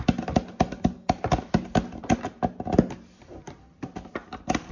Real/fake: real